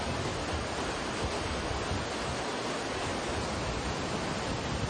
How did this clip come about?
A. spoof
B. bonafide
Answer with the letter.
B